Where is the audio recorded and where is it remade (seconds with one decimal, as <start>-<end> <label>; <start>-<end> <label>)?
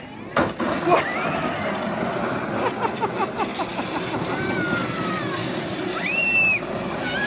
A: 0.0-7.3 recorded